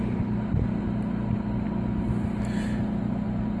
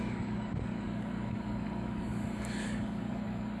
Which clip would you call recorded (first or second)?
first